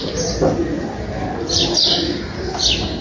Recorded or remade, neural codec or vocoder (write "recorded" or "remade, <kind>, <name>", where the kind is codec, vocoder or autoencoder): recorded